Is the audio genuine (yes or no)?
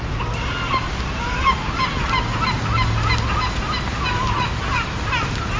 yes